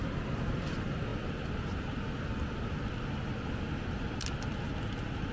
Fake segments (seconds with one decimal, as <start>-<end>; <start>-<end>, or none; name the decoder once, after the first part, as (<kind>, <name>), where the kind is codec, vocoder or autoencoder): none